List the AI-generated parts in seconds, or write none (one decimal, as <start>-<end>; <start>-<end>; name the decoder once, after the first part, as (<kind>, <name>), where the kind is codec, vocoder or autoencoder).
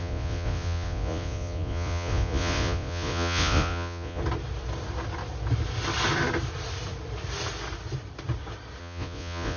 0.0-4.2 (vocoder, Vocos); 8.8-9.6